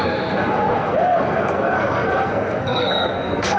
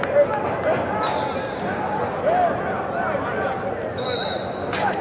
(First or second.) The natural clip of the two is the second